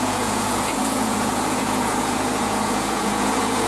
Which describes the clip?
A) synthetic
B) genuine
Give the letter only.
A